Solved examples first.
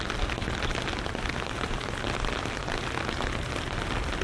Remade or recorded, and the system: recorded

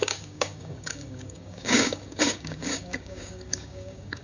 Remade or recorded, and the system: remade, codec, DAC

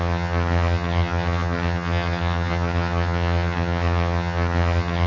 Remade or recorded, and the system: remade, vocoder, HiFi-GAN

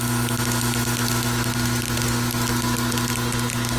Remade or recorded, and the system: recorded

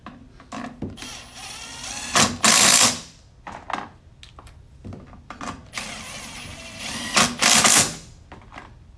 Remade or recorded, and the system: recorded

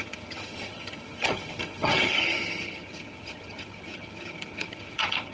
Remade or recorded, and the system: remade, vocoder, HiFi-GAN